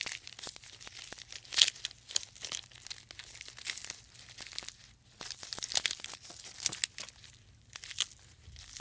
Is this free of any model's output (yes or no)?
yes